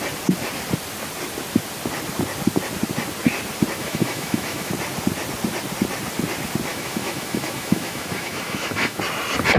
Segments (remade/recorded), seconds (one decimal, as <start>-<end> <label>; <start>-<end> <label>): 0.0-3.8 recorded; 3.8-4.7 remade; 4.7-6.7 recorded; 6.7-9.0 remade; 9.0-9.6 recorded